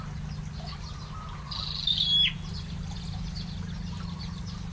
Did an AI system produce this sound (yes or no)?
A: no